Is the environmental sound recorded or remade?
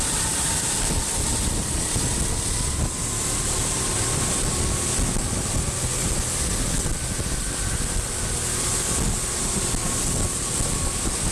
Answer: recorded